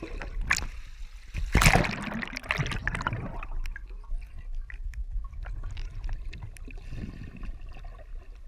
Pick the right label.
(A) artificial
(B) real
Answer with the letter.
B